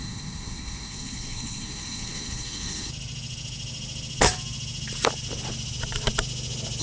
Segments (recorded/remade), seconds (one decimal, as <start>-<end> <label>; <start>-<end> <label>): 0.0-2.9 remade; 2.9-6.8 recorded